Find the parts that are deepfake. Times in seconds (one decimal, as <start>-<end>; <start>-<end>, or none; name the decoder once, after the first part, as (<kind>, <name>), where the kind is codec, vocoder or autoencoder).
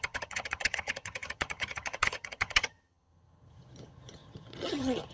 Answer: 0.0-5.1 (vocoder, HiFi-GAN)